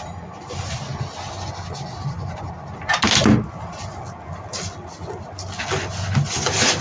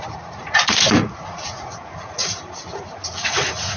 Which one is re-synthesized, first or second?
second